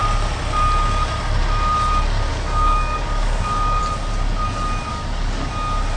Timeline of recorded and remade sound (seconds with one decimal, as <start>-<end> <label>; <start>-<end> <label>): 0.0-2.3 recorded; 2.3-3.8 remade; 3.8-4.9 recorded; 4.9-5.5 remade; 5.5-6.0 recorded

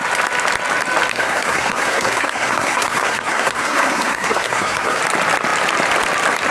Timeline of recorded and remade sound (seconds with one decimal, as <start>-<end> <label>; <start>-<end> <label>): 0.0-1.1 recorded; 1.1-5.0 remade; 5.0-6.5 recorded

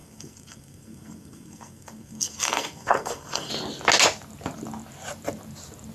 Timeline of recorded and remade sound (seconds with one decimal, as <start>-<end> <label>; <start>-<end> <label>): 0.0-3.5 remade; 3.5-5.9 recorded

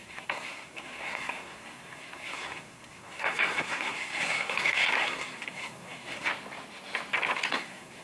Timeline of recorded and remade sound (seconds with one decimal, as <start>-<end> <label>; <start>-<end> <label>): 0.0-6.3 remade; 6.3-7.5 recorded; 7.5-8.0 remade

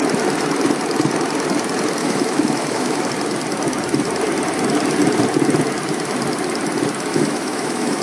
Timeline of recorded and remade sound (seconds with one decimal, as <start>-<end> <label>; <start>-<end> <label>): 0.0-2.0 recorded; 2.0-3.1 remade; 3.1-7.1 recorded; 7.1-8.0 remade

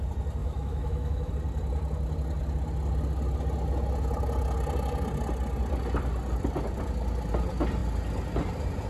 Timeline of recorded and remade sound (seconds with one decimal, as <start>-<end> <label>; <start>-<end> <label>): 0.0-0.4 recorded; 0.4-1.3 remade; 1.3-8.9 recorded